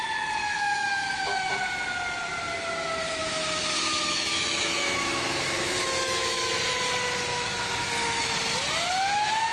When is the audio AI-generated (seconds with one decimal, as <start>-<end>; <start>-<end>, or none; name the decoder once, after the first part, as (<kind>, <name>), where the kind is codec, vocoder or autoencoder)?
0.4-1.6 (autoencoder, DAC-VAE); 3.2-6.5; 7.3-7.9